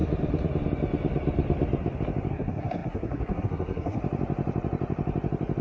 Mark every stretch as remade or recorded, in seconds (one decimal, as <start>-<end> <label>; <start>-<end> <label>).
0.0-2.3 recorded; 2.3-4.0 remade; 4.0-5.6 recorded